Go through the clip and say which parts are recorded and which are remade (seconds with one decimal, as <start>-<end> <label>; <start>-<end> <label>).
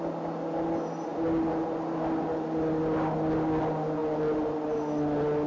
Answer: 0.0-5.5 recorded